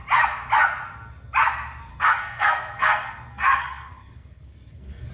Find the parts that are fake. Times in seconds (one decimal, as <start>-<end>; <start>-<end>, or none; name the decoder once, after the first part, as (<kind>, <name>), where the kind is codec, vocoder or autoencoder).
1.9-5.1 (codec, SNAC)